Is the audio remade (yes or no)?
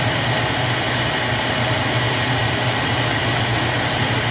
no